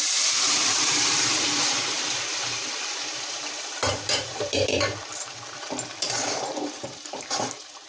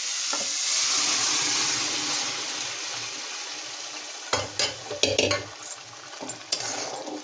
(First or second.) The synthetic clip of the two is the first